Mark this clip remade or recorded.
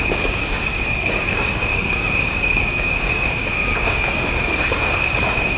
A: remade